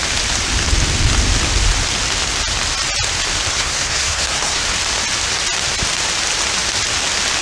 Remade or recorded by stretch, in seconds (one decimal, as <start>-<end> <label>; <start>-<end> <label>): 0.0-3.5 recorded; 3.5-4.6 remade; 4.6-7.4 recorded